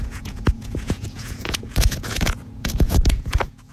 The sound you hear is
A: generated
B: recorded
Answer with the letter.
A